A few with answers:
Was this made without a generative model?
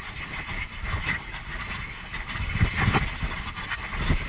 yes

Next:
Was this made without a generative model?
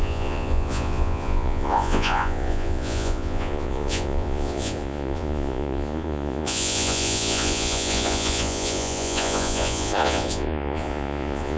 no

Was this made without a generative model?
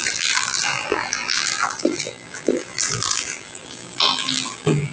no